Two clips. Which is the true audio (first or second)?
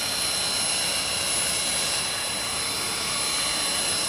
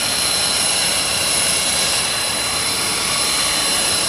first